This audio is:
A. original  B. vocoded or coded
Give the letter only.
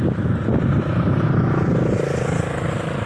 A